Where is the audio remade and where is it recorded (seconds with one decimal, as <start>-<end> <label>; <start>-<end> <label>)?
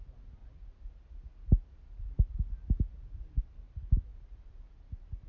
0.0-0.4 remade; 0.4-2.9 recorded; 2.9-4.1 remade; 4.1-4.7 recorded; 4.7-5.3 remade